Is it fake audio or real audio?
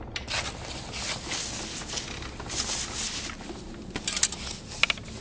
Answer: real